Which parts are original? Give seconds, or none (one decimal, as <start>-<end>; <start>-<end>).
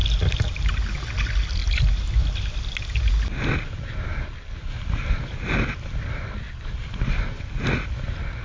0.0-8.4